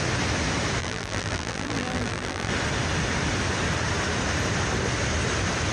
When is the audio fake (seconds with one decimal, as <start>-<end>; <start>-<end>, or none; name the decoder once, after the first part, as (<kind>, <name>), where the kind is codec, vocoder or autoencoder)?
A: 0.8-2.5 (vocoder, BigVGAN v2)